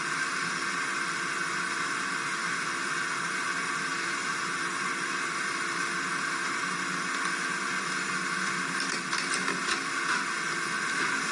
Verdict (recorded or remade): recorded